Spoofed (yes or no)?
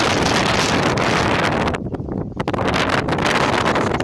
no